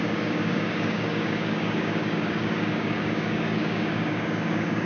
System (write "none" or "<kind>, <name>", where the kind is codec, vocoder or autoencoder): codec, DAC